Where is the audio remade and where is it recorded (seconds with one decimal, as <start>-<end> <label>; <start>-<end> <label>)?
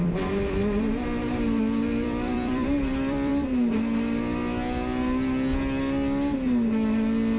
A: 0.0-0.6 remade; 0.6-1.6 recorded; 1.6-3.3 remade; 3.3-7.4 recorded